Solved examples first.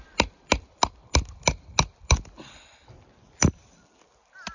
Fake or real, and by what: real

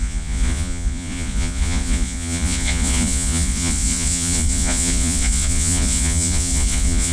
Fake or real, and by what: fake, vocoder, Vocos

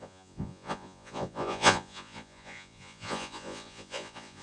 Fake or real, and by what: fake, vocoder, Vocos